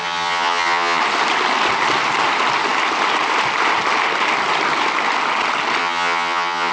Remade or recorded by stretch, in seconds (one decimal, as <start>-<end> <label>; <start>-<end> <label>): 0.0-1.0 remade; 1.0-5.8 recorded; 5.8-6.7 remade